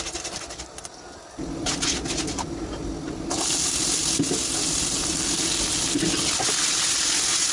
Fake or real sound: real